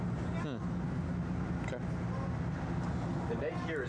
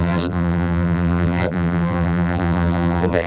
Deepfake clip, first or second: second